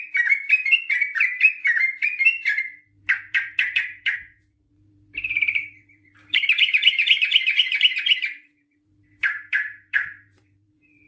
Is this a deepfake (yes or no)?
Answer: yes